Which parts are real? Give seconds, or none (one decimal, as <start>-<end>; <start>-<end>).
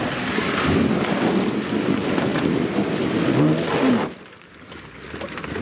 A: 0.0-5.6